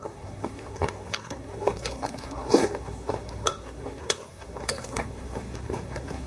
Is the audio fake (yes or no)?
yes